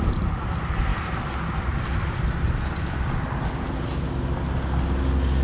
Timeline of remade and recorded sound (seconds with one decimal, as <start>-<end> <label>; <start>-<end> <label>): 0.0-5.4 recorded